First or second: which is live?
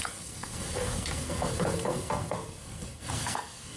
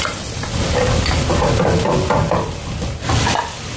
second